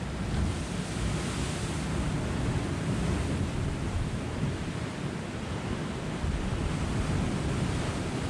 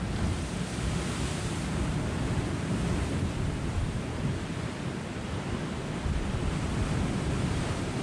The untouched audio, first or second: first